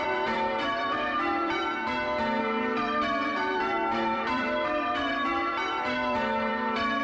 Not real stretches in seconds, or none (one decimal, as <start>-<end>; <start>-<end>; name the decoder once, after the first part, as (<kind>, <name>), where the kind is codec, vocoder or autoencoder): 0.0-1.8 (vocoder, BigVGAN v2); 2.4-7.0